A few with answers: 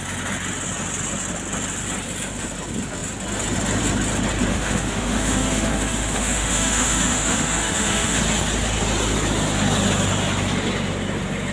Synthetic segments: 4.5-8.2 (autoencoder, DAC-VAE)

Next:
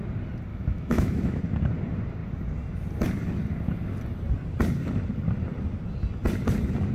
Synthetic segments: 0.5-1.4 (autoencoder, DAC-VAE)

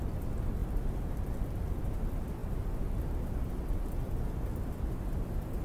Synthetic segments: none

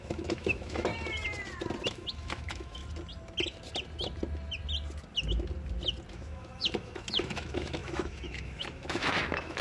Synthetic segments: 0.0-0.9 (autoencoder, DAC-VAE); 1.9-2.8; 6.1-9.6

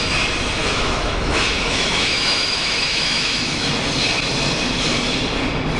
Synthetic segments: 0.6-3.7 (autoencoder, DAC-VAE)

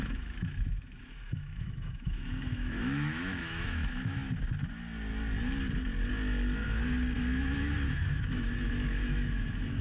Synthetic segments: 0.0-4.2 (autoencoder, DAC-VAE); 7.4-9.8